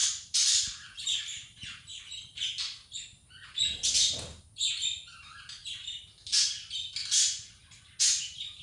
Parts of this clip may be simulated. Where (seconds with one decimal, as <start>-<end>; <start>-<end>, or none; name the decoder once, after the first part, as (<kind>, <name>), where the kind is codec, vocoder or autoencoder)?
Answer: 0.0-1.9 (vocoder, BigVGAN v2); 5.1-5.6; 8.0-8.6